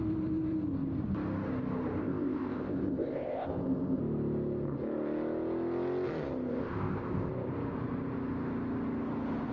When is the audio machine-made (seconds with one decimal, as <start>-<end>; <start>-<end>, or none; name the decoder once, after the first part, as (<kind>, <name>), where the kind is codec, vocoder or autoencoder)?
2.0-4.0 (codec, ZipCodec); 6.5-7.3

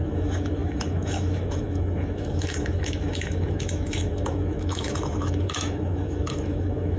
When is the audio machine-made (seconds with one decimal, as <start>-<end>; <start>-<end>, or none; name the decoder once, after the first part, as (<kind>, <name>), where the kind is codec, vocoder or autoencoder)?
0.0-7.0 (autoencoder, DAC-VAE)